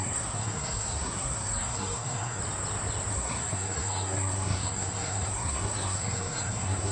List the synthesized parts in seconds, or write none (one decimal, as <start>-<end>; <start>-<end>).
0.0-2.4; 3.1-6.9